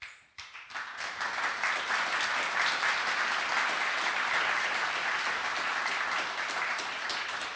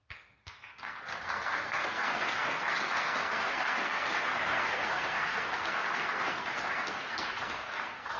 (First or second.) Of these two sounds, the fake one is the second